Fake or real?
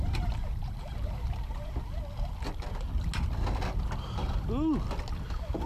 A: real